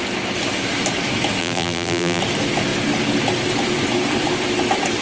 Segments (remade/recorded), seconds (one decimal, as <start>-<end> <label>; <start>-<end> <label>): 0.0-1.4 recorded; 1.4-2.2 remade; 2.2-5.0 recorded